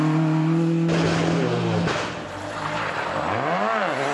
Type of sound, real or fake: real